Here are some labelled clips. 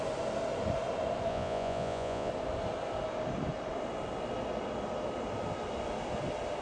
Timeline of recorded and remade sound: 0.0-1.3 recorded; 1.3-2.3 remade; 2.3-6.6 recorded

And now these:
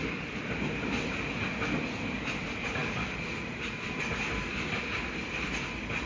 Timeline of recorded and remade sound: 0.0-6.1 recorded

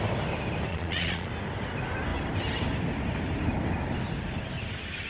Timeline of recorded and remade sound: 0.0-0.7 recorded; 0.7-1.3 remade; 1.3-5.1 recorded

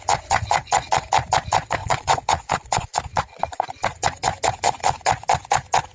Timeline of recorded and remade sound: 0.0-1.8 recorded; 1.8-3.4 remade; 3.4-5.9 recorded

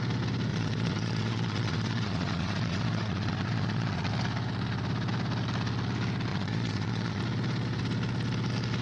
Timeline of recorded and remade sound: 0.0-0.5 recorded; 0.5-4.1 remade; 4.1-6.3 recorded; 6.3-7.2 remade; 7.2-8.8 recorded

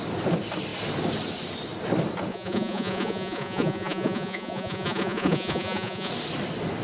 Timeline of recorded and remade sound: 0.0-2.3 recorded; 2.3-6.1 remade; 6.1-6.8 recorded

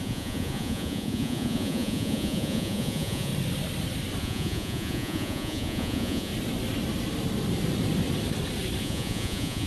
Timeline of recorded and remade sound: 0.0-3.3 remade; 3.3-4.2 recorded; 4.2-6.3 remade; 6.3-8.8 recorded; 8.8-9.7 remade